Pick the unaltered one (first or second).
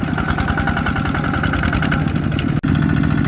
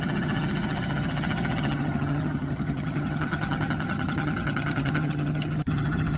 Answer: first